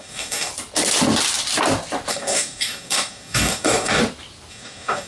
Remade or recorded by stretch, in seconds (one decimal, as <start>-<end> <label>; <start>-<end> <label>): 0.0-0.5 remade; 0.5-2.1 recorded; 2.1-4.0 remade; 4.0-4.5 recorded; 4.5-5.1 remade